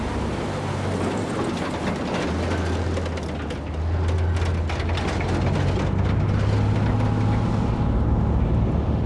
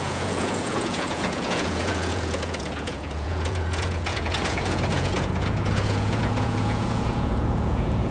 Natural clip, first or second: first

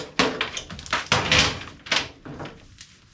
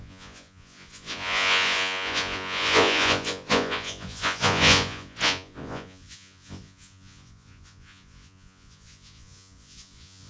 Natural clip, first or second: first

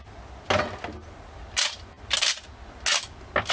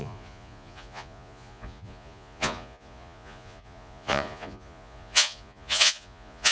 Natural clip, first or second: first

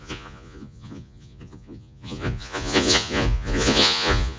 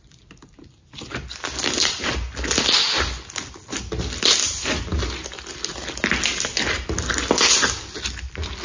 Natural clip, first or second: second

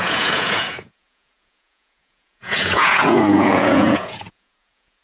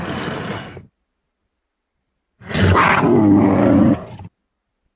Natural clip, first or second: second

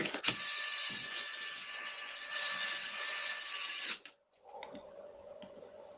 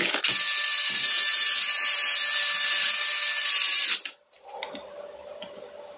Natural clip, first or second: second